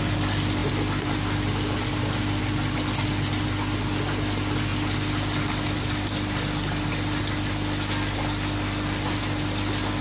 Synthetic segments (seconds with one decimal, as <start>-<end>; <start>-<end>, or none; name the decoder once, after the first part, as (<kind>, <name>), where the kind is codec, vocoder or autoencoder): none